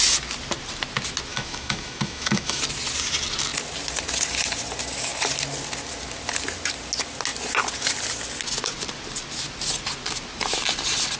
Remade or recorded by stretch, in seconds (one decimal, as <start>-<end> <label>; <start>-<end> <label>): 0.0-1.3 recorded; 1.3-2.6 remade; 2.6-11.2 recorded